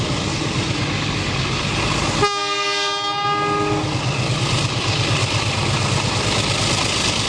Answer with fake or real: real